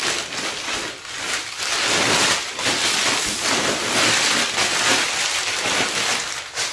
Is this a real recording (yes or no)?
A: yes